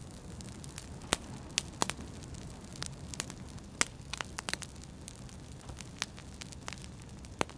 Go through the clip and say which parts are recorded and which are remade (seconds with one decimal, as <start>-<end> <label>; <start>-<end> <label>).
0.0-7.6 recorded